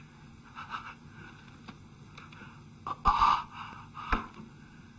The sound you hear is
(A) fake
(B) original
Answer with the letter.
B